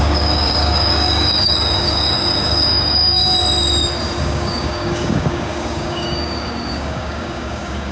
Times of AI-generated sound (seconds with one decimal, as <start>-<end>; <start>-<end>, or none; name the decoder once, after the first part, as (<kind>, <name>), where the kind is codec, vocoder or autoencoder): 0.0-3.2 (codec, DAC); 4.2-7.9